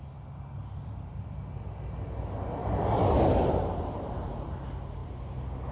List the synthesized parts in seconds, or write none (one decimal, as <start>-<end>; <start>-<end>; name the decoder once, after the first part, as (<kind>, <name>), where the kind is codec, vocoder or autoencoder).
0.6-1.4 (vocoder, BigVGAN v2); 2.6-4.6